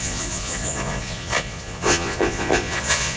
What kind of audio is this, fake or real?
fake